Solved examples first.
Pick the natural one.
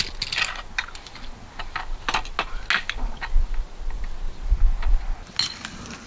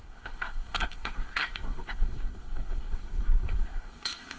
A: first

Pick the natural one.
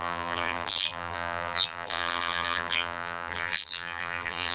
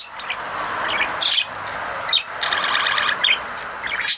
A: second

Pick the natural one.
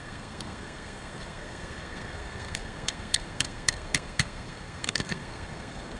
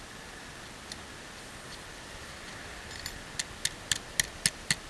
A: second